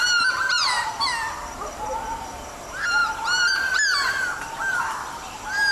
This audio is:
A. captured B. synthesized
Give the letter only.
A